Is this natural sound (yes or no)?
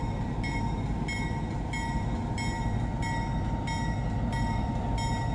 yes